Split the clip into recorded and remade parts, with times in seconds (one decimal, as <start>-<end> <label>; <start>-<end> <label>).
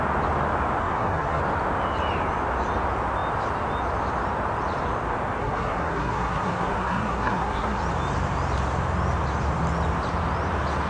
0.0-0.8 recorded; 0.8-1.4 remade; 1.4-5.4 recorded; 5.4-7.8 remade; 7.8-10.9 recorded